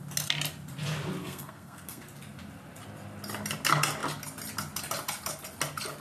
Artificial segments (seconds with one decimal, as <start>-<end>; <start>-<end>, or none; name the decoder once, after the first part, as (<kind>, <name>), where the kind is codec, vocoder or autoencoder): 1.2-2.0 (codec, SNAC)